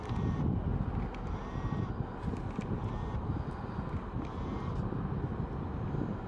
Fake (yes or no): no